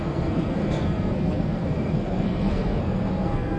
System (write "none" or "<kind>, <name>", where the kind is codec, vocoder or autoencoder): codec, SNAC